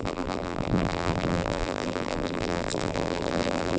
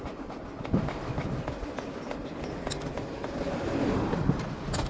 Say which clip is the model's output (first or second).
first